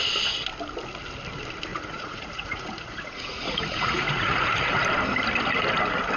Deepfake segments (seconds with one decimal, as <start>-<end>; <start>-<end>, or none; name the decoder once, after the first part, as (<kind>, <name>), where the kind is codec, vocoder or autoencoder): 1.7-4.8 (vocoder, Vocos)